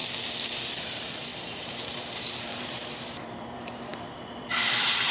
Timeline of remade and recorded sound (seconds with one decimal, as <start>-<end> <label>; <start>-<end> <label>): 0.0-0.8 recorded; 0.8-5.1 remade